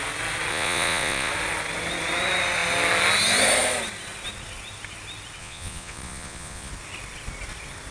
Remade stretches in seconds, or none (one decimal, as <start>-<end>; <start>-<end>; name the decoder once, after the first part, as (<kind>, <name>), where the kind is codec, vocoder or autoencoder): 0.5-1.3 (vocoder, Vocos); 5.4-6.7